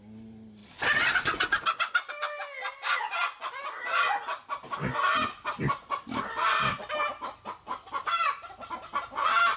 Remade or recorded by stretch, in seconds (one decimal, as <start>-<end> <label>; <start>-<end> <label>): 0.0-9.6 recorded